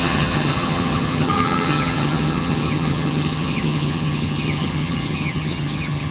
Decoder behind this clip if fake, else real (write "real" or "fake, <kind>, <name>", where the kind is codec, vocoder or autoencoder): fake, vocoder, HiFi-GAN